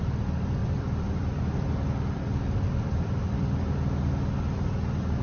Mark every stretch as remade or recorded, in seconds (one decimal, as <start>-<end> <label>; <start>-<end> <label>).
0.0-0.6 recorded; 0.6-3.7 remade; 3.7-5.2 recorded